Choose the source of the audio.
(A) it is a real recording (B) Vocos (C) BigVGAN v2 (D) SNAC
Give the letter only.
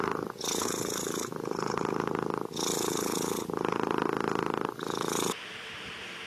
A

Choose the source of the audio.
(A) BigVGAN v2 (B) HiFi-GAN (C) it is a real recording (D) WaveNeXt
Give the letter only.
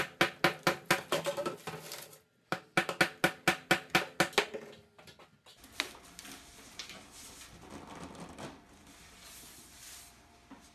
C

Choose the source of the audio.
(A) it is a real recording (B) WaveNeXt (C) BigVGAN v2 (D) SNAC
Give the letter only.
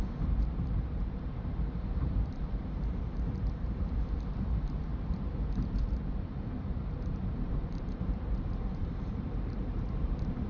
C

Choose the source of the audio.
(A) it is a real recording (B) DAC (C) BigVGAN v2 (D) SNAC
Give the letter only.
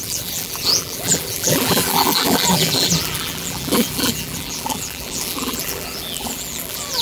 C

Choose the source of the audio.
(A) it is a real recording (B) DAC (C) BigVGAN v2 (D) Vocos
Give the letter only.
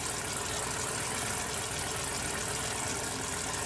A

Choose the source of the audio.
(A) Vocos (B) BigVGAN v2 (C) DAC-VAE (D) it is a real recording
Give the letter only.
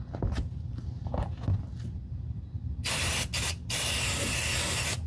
D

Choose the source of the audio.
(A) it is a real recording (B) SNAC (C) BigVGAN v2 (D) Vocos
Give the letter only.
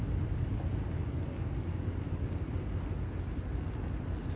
A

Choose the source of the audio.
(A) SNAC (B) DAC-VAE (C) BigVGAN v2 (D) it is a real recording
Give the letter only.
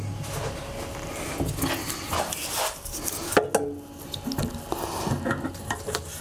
D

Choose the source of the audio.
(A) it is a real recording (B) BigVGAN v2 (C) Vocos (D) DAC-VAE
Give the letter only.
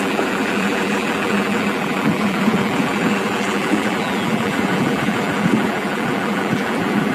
B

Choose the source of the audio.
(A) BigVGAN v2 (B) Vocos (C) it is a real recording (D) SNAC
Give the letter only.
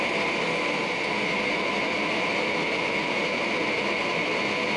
C